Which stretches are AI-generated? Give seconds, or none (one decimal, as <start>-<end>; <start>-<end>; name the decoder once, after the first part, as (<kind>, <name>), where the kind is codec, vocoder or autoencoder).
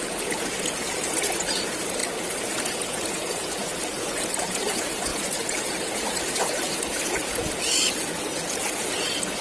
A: 0.0-9.4 (vocoder, Vocos)